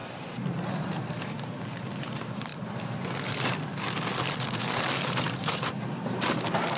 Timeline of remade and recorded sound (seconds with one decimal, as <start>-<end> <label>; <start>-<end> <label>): 0.0-2.5 remade; 2.5-4.8 recorded; 4.8-6.8 remade